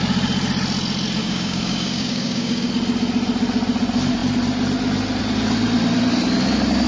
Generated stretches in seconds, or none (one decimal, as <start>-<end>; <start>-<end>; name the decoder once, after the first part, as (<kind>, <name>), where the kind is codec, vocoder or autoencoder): 1.2-2.7 (codec, DAC)